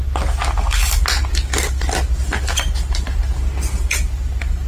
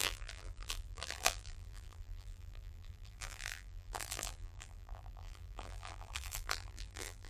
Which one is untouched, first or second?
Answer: first